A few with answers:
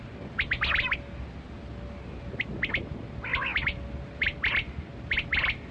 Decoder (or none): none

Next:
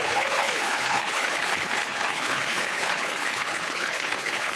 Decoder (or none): codec, HILCodec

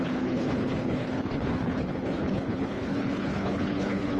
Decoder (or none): codec, HILCodec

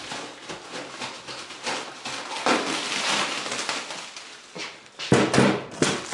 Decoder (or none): none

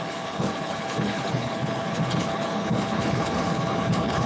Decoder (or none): codec, HILCodec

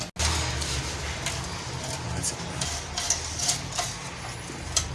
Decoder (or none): none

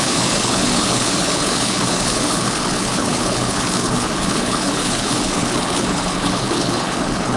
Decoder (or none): codec, HILCodec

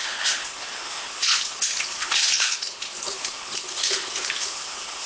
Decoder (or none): codec, HILCodec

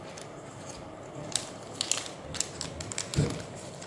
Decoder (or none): none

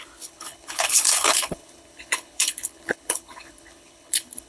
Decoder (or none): codec, HILCodec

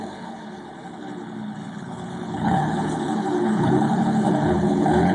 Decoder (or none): codec, HILCodec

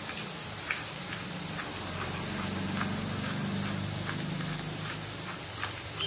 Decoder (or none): none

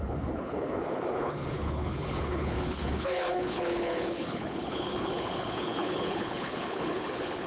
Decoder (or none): codec, HILCodec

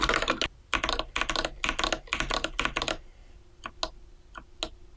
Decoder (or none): none